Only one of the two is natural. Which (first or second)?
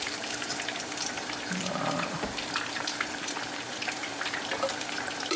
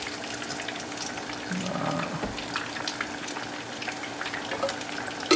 second